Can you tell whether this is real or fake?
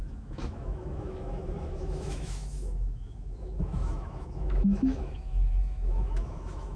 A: fake